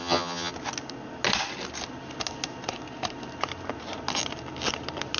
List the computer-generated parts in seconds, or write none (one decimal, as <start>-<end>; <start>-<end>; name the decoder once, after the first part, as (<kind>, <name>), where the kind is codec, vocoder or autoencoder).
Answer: 0.0-0.5 (vocoder, HiFi-GAN)